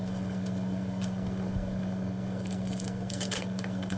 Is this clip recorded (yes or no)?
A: no